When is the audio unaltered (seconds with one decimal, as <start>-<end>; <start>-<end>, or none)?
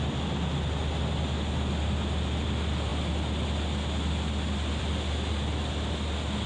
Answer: 0.0-6.5